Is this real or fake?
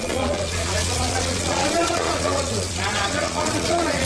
fake